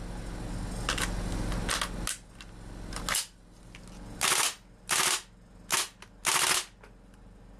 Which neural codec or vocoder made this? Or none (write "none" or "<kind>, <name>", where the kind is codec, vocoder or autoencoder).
none